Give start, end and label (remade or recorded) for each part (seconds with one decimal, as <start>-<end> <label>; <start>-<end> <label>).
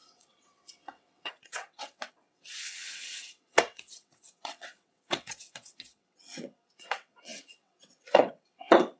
0.0-9.0 remade